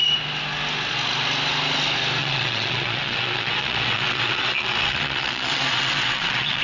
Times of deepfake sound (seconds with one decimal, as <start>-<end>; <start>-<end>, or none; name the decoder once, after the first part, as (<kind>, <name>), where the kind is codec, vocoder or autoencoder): 2.2-6.6 (vocoder, WaveNeXt)